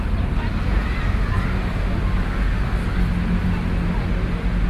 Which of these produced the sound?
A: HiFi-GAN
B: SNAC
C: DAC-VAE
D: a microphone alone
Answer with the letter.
D